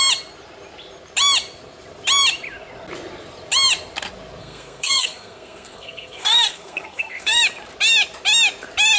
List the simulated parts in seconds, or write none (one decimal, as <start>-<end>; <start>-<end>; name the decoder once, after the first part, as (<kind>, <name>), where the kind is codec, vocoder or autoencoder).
4.4-7.4 (codec, SNAC)